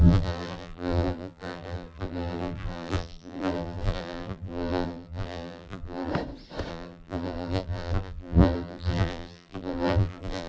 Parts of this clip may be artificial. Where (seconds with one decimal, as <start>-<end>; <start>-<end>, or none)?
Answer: 0.0-6.1; 6.7-10.5